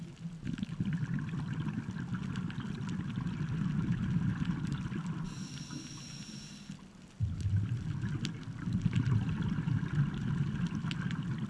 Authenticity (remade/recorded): recorded